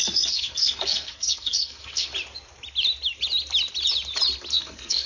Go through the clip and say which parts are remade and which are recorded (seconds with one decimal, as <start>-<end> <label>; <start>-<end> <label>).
0.0-2.1 remade; 2.1-4.5 recorded; 4.5-5.1 remade